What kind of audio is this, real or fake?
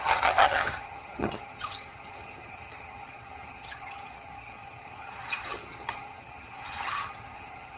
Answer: fake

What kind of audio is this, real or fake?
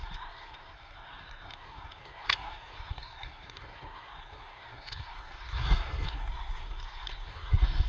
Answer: fake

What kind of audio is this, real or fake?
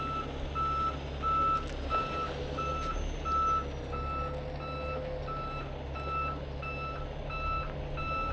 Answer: real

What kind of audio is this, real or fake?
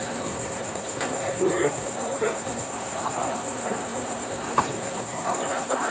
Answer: fake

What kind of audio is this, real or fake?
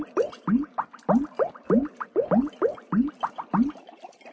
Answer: real